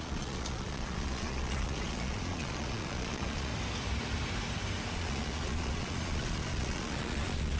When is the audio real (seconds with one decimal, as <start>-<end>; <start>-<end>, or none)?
3.5-4.9

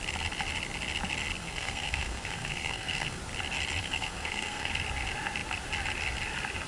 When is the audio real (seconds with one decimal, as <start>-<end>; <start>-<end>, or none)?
0.0-1.4; 3.2-3.8; 4.7-6.7

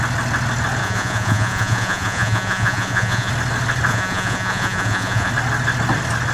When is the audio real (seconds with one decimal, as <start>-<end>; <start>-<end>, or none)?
0.0-0.8; 3.3-3.9; 5.3-6.3

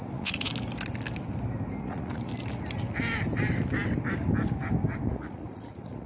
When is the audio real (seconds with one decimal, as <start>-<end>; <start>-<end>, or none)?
0.5-1.8; 2.3-5.1

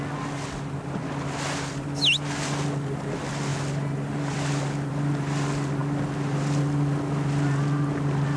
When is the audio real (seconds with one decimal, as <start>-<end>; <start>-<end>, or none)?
0.0-8.4

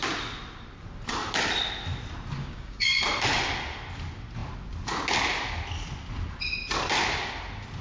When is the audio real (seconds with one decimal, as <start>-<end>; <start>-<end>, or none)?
0.0-2.4; 3.0-7.8

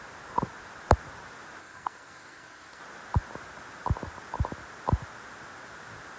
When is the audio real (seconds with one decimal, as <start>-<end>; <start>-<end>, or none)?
0.0-1.6; 2.8-6.2

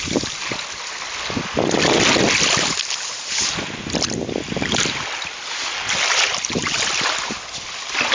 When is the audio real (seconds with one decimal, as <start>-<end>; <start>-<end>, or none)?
0.0-8.1